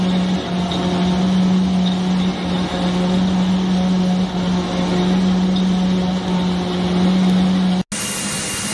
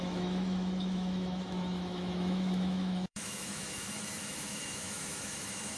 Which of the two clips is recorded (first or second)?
first